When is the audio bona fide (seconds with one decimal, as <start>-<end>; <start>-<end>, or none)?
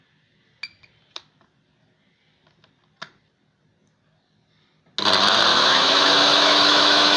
0.0-5.5